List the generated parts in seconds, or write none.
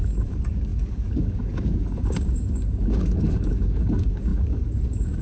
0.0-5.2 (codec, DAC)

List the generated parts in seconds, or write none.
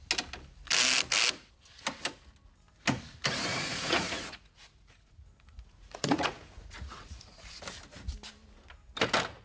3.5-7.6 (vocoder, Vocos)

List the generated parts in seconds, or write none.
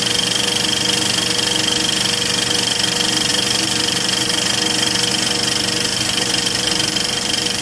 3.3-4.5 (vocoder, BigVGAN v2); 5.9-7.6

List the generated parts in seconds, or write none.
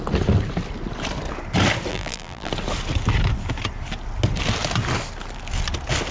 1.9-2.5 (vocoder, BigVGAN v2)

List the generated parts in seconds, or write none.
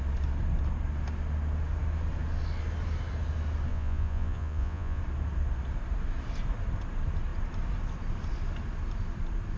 3.7-5.0 (vocoder, Vocos)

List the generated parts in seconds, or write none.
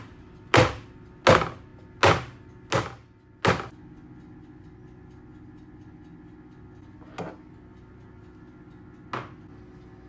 none